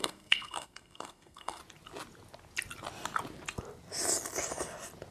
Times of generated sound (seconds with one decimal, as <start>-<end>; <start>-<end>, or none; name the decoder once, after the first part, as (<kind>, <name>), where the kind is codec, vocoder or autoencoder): 0.0-1.6 (codec, SNAC)